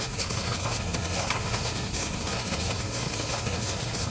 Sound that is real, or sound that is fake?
fake